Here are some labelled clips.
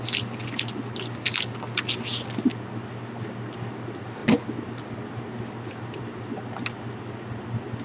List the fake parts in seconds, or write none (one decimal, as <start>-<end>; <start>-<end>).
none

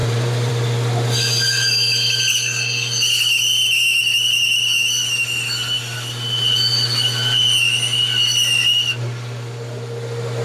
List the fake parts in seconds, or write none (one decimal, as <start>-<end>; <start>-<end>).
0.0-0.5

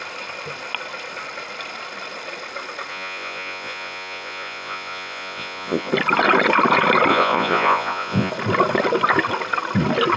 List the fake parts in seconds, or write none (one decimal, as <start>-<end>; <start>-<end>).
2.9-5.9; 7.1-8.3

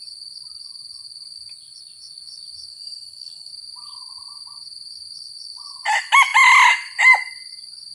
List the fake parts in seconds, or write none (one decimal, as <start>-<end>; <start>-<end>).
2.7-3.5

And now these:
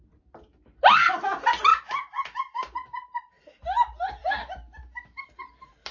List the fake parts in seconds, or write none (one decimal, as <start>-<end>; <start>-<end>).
1.7-3.6; 4.2-5.9